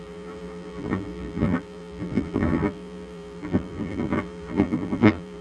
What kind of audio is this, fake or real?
fake